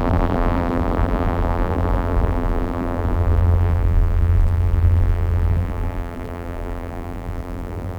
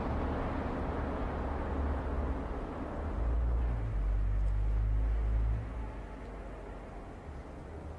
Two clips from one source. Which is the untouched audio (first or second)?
second